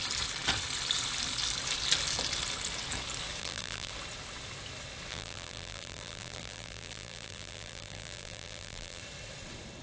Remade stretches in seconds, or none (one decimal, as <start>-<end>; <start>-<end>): 3.4-3.9; 5.1-9.0